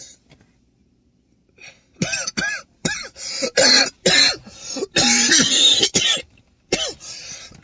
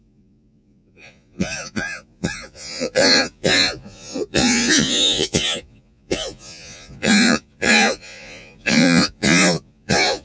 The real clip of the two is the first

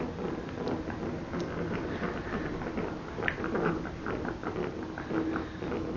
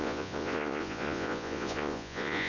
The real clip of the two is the first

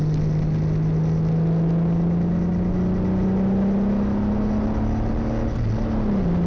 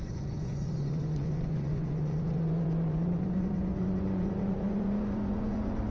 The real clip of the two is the first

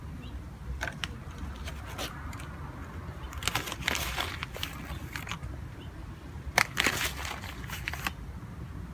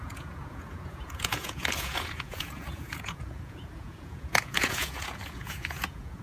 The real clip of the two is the first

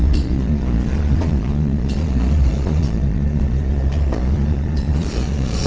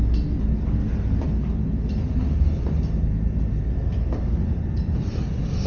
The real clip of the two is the second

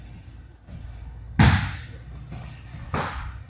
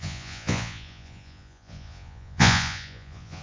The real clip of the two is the first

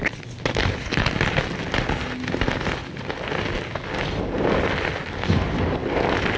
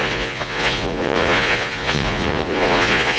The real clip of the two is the first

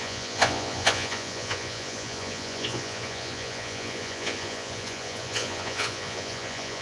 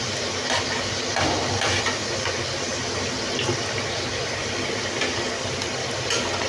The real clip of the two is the second